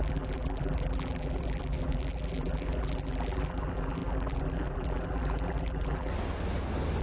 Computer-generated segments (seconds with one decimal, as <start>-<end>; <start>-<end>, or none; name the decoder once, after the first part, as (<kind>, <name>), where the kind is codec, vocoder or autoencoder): 0.0-6.1 (vocoder, BigVGAN v2)